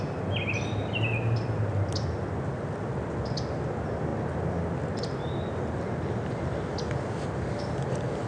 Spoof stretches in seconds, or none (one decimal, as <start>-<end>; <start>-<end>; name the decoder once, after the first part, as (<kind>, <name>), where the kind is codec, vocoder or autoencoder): none